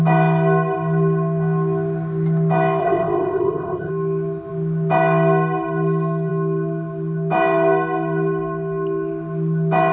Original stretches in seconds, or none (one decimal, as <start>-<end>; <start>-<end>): 0.0-2.8; 3.9-9.9